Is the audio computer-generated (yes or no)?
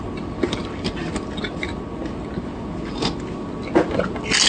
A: no